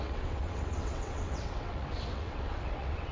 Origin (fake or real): fake